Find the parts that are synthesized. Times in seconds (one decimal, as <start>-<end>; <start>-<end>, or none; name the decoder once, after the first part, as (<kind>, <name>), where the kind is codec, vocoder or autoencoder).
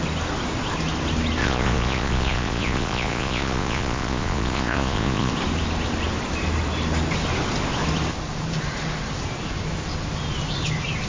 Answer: 1.4-5.3 (vocoder, Vocos)